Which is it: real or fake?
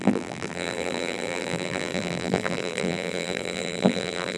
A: fake